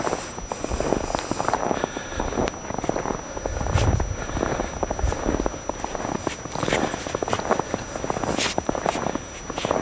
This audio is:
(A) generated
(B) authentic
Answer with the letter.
B